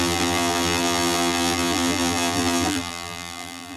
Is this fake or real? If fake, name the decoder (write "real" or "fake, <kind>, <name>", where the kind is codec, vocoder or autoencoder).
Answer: fake, vocoder, BigVGAN v2